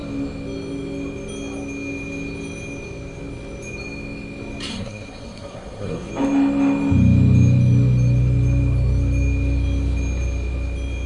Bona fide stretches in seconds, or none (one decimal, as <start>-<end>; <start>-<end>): 0.0-4.7; 6.1-11.1